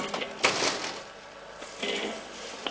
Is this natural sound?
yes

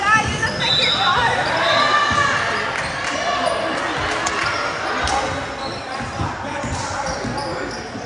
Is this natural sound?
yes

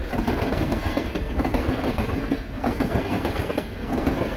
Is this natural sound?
no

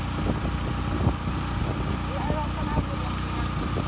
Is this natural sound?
yes